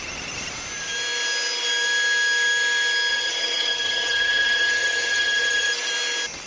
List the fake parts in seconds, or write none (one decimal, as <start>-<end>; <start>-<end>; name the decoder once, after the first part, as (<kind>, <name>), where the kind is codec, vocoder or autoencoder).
3.1-5.7 (vocoder, HiFi-GAN)